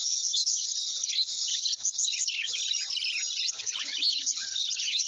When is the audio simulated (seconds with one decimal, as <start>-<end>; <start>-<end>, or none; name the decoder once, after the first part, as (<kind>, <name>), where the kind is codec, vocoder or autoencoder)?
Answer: 0.0-2.6 (codec, HILCodec); 3.5-5.1